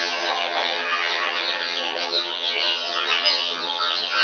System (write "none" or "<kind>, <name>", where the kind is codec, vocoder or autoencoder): vocoder, HiFi-GAN